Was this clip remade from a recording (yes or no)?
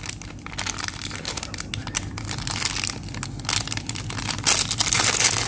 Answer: no